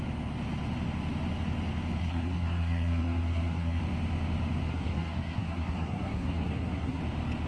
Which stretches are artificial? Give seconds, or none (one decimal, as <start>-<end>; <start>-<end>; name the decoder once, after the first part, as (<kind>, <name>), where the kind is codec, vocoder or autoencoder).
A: 2.0-3.8 (codec, SNAC); 4.7-7.0